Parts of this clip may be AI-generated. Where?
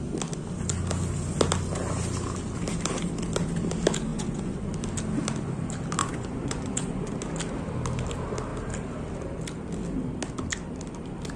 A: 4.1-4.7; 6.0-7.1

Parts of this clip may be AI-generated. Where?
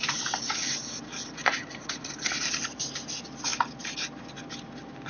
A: 1.4-2.1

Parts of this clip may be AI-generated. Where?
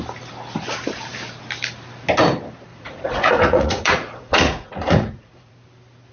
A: 2.7-5.5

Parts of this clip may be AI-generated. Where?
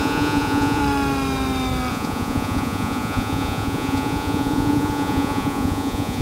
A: 0.0-0.8; 1.9-6.2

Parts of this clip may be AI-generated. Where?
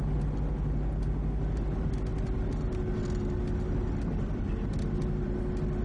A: none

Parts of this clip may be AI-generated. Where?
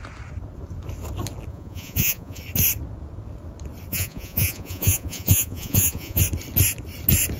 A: 1.5-2.4; 3.9-6.2